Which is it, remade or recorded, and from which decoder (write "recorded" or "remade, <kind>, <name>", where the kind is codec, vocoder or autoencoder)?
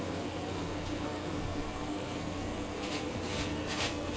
remade, codec, SNAC